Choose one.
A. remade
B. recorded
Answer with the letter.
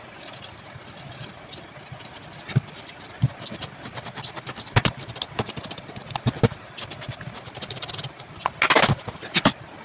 B